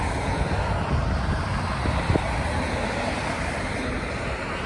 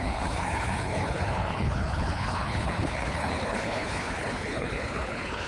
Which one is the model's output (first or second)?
second